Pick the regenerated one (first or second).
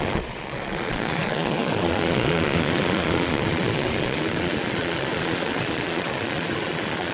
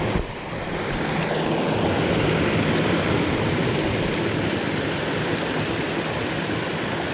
first